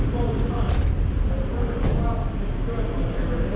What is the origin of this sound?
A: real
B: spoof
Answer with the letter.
A